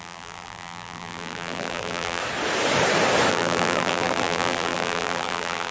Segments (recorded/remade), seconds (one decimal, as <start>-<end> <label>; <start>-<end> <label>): 0.0-2.2 remade; 2.2-3.3 recorded; 3.3-5.7 remade